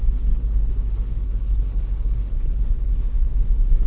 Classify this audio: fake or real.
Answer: fake